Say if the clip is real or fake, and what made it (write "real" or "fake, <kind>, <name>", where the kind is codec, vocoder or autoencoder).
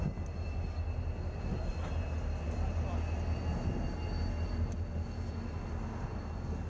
real